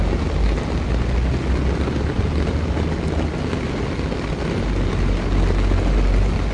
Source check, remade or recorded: recorded